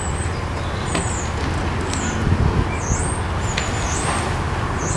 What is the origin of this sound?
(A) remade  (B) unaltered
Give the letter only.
B